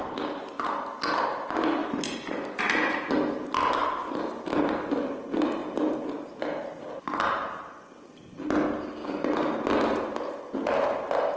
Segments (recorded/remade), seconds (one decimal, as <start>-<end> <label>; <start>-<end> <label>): 0.0-3.8 recorded; 3.8-4.8 remade; 4.8-5.6 recorded; 5.6-6.4 remade; 6.4-11.4 recorded